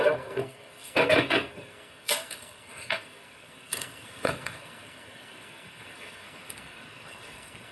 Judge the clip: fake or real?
fake